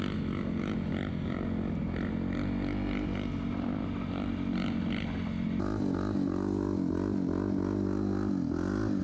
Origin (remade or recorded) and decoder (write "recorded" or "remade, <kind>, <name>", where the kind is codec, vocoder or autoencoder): recorded